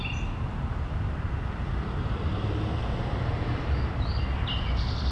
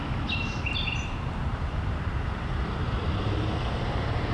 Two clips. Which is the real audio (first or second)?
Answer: first